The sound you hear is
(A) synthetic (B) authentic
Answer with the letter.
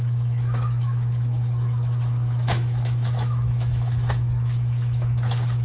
A